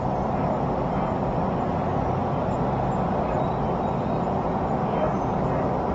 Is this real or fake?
real